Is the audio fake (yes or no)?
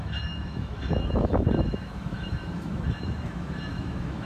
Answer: yes